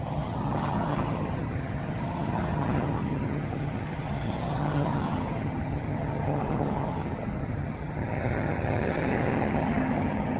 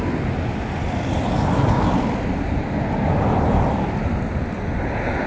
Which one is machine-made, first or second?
first